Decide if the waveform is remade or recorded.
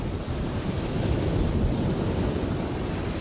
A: recorded